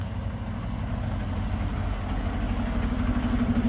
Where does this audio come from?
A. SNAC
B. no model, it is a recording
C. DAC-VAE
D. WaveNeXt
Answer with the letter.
B